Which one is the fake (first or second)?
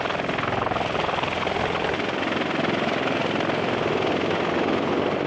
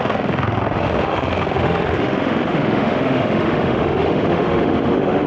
second